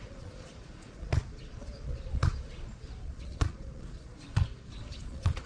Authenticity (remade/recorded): remade